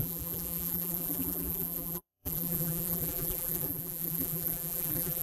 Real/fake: fake